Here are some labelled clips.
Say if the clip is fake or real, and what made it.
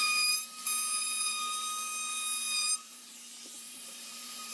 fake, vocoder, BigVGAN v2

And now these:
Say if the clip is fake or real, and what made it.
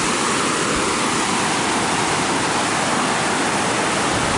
real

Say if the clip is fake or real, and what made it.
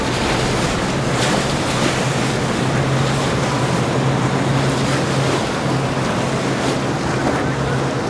real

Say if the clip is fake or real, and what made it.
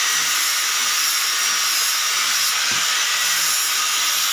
real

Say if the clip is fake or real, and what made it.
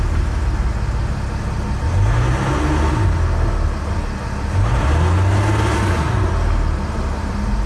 real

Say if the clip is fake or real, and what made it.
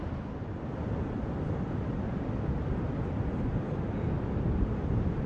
real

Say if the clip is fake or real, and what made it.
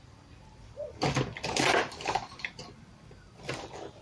fake, vocoder, BigVGAN v2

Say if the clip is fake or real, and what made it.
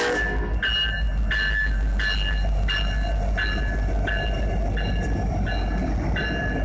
real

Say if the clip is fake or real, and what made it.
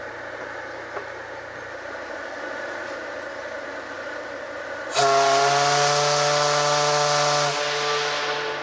real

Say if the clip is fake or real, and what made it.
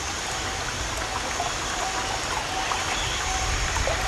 real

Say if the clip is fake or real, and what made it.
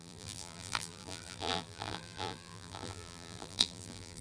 fake, vocoder, BigVGAN v2